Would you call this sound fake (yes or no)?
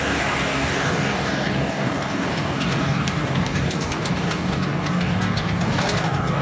yes